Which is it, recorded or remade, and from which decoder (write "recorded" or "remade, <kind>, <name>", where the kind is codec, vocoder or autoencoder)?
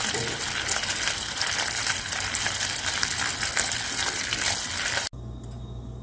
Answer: recorded